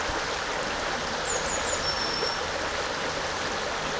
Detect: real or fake real